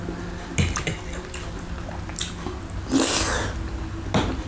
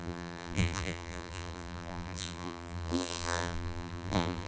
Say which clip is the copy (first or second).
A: second